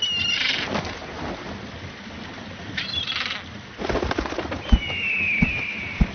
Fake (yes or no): no